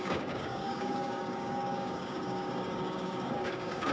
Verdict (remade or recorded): remade